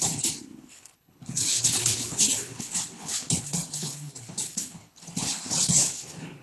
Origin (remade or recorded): remade